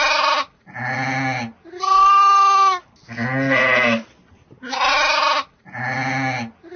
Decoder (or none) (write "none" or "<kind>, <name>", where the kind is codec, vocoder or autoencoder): none